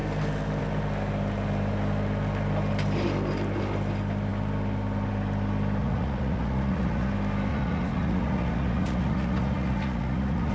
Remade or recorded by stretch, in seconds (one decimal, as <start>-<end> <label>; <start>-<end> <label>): 0.0-5.8 recorded; 5.8-7.1 remade; 7.1-7.5 recorded; 7.5-10.5 remade